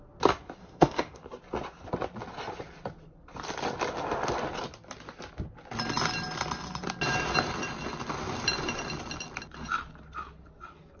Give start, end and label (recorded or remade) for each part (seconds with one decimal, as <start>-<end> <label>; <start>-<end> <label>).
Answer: 0.0-0.6 recorded; 0.6-1.2 remade; 1.2-11.0 recorded